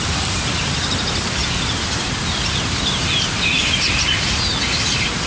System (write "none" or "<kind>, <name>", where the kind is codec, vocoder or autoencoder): none